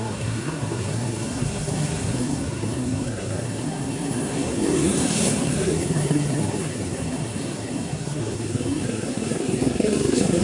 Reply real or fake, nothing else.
fake